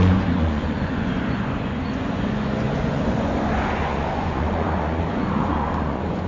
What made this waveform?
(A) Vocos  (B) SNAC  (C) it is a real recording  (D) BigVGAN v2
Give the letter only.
A